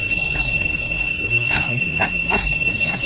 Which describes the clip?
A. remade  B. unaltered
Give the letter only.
A